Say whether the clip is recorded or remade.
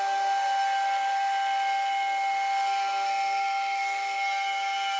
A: remade